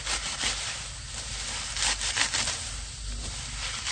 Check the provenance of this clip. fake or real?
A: real